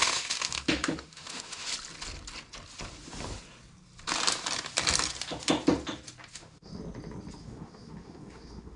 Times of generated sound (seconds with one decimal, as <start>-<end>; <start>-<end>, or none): 0.0-1.7; 6.3-6.7; 7.4-8.8